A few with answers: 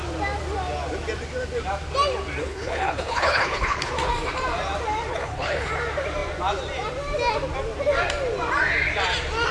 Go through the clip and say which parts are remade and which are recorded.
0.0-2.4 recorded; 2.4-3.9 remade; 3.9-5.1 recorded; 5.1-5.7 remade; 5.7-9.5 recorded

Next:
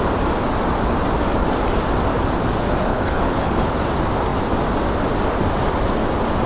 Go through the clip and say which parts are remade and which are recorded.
0.0-2.9 recorded; 2.9-3.7 remade; 3.7-6.5 recorded

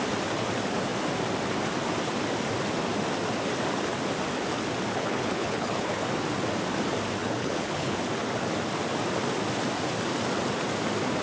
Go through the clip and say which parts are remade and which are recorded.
0.0-4.9 recorded; 4.9-6.0 remade; 6.0-7.2 recorded; 7.2-8.0 remade; 8.0-11.2 recorded

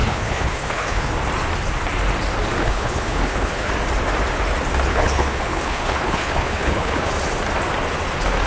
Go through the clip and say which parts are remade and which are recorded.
0.0-1.1 remade; 1.1-2.6 recorded; 2.6-3.7 remade; 3.7-4.9 recorded; 4.9-7.1 remade; 7.1-8.5 recorded

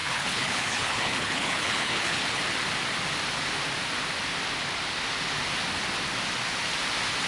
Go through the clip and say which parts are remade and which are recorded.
0.0-2.4 remade; 2.4-7.3 recorded

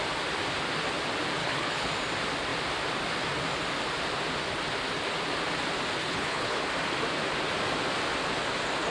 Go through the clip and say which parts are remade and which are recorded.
0.0-1.4 recorded; 1.4-1.9 remade; 1.9-6.0 recorded; 6.0-6.6 remade; 6.6-8.9 recorded

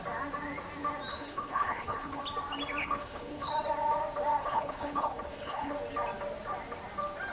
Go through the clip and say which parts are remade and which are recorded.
0.0-1.1 recorded; 1.1-2.2 remade; 2.2-2.8 recorded; 2.8-3.5 remade; 3.5-4.4 recorded; 4.4-5.7 remade; 5.7-7.3 recorded

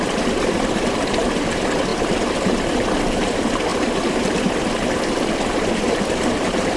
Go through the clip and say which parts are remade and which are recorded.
0.0-6.8 recorded